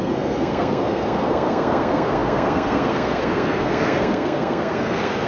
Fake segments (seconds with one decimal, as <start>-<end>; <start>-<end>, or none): 0.0-5.3